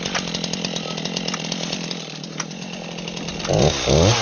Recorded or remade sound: recorded